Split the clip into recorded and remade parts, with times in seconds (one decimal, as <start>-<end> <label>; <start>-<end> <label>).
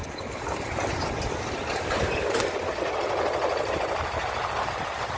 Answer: 0.0-5.2 recorded